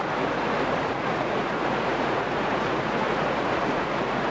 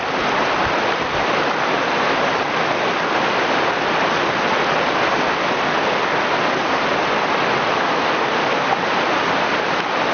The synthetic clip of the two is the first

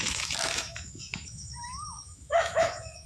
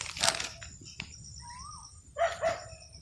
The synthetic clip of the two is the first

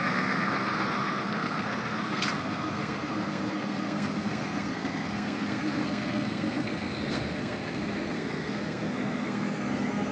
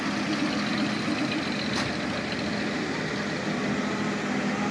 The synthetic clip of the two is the first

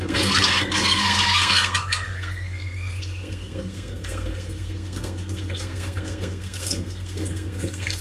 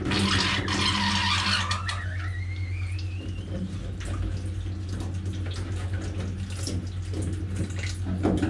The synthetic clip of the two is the first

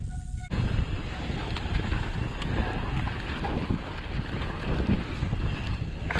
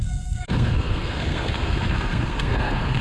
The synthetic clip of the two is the second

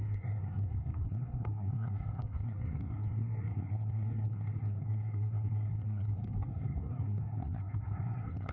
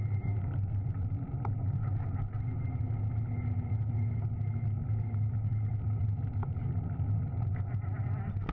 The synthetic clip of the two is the first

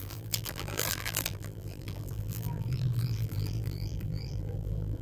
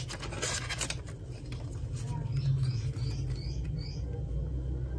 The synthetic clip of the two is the first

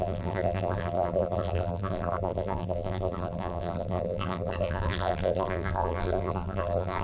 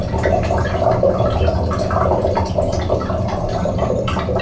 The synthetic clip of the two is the first